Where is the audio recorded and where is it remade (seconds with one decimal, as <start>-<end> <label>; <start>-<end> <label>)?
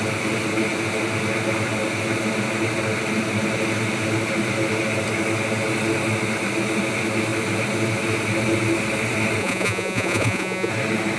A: 0.0-9.4 recorded; 9.4-10.7 remade; 10.7-11.2 recorded